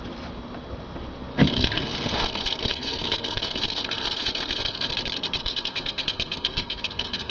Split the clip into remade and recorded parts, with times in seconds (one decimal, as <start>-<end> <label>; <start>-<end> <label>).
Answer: 0.0-1.3 recorded; 1.3-4.9 remade; 4.9-5.4 recorded; 5.4-7.3 remade